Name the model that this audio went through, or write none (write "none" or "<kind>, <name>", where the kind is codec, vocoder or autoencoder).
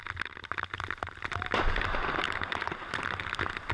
none